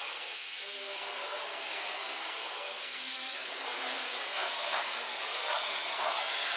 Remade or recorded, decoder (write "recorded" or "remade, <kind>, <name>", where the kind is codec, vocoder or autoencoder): remade, codec, SNAC